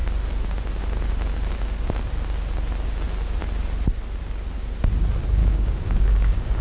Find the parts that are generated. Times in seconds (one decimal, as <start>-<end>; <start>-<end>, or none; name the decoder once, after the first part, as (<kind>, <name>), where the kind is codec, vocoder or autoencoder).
5.4-6.6 (codec, DAC)